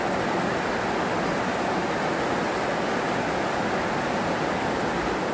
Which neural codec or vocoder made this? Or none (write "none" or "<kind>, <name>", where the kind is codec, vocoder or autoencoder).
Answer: none